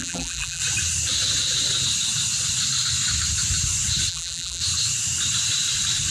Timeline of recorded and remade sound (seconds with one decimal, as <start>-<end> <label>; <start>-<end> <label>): 0.0-0.6 remade; 0.6-4.1 recorded; 4.1-4.6 remade; 4.6-6.1 recorded